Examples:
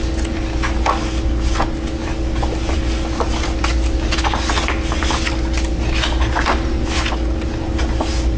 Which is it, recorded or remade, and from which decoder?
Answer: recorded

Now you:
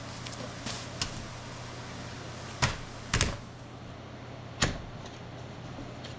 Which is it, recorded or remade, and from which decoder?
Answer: recorded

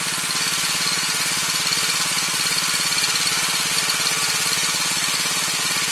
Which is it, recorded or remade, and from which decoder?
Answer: recorded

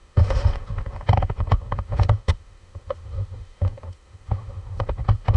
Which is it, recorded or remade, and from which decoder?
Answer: remade, autoencoder, DAC-VAE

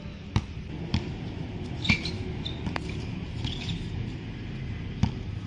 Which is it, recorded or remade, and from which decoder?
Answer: recorded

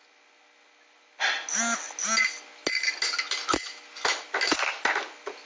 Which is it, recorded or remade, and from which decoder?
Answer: recorded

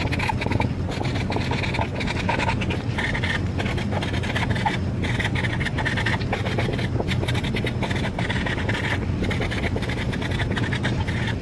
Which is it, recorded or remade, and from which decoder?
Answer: recorded